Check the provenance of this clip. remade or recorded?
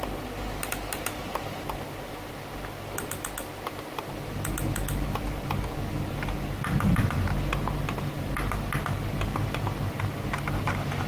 recorded